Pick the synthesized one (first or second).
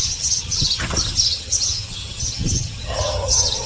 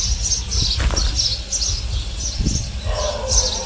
first